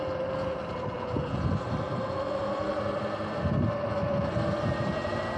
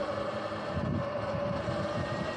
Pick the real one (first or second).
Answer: first